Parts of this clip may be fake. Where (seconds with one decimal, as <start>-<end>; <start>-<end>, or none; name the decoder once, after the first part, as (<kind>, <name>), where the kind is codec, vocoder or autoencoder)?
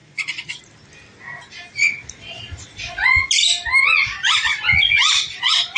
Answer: 0.0-0.6 (vocoder, Vocos); 1.8-3.3; 3.8-5.8